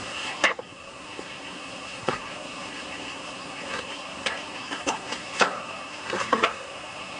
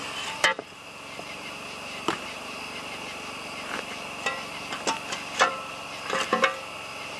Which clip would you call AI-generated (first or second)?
first